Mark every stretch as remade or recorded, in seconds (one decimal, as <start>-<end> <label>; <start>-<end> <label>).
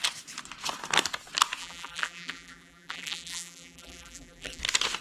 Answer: 0.0-1.6 recorded; 1.6-4.6 remade; 4.6-5.0 recorded